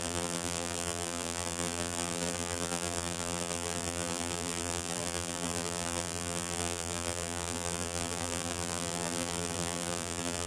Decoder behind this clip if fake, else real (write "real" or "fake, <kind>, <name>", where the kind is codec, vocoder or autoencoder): fake, vocoder, BigVGAN v2